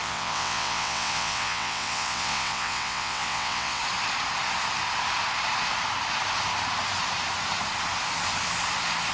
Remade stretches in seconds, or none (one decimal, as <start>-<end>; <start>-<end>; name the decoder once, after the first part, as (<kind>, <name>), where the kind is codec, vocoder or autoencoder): 0.0-3.8 (vocoder, WaveNeXt)